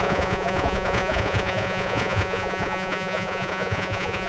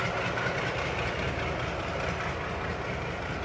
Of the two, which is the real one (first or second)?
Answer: second